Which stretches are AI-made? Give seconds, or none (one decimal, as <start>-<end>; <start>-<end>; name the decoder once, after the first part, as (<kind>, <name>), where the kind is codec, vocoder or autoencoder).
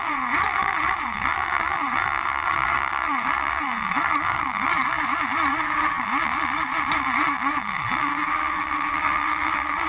0.0-9.9 (vocoder, WaveNeXt)